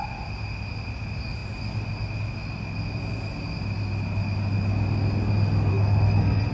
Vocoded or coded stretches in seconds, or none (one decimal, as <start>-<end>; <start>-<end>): 5.7-6.5